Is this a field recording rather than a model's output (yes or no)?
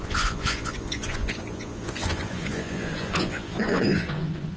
no